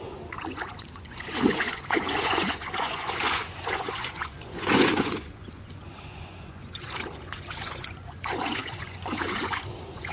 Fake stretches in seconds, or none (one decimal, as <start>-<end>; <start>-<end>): 0.0-10.1